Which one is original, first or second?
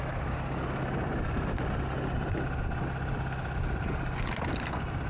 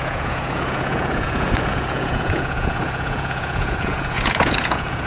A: first